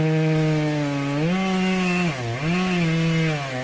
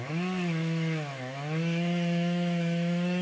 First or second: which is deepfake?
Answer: second